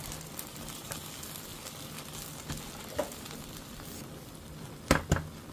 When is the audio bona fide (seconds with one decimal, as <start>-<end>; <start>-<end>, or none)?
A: 0.0-5.5